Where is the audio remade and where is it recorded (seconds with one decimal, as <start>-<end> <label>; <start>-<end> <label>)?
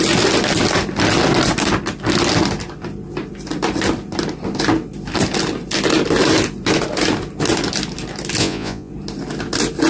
0.0-8.4 recorded; 8.4-8.9 remade; 8.9-9.9 recorded